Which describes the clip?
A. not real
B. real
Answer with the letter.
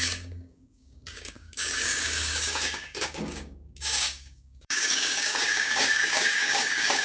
A